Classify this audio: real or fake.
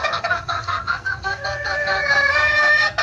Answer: fake